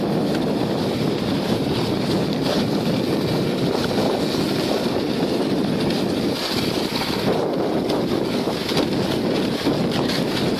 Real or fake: real